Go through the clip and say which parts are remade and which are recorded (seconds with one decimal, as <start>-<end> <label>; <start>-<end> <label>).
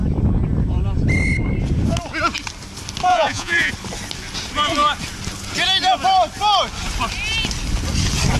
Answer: 0.0-3.1 recorded; 3.1-3.7 remade; 3.7-8.4 recorded